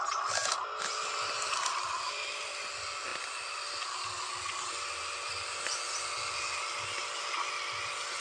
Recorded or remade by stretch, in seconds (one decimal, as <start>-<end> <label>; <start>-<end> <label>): 0.0-8.2 recorded